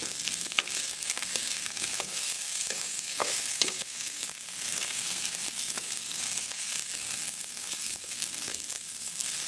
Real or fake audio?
fake